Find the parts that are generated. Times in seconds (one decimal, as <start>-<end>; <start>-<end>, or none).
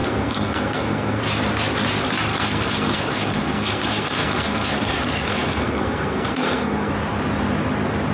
0.0-1.2; 2.3-6.9